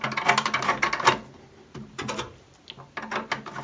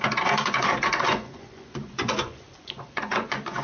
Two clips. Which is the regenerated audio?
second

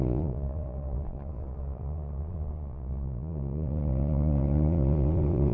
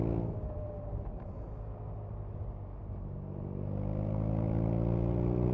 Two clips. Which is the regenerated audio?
first